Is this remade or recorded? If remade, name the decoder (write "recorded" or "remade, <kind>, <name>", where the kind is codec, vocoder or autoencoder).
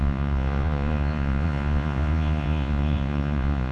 remade, vocoder, Vocos